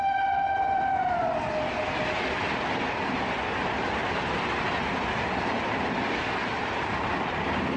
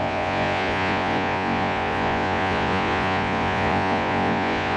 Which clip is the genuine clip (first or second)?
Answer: first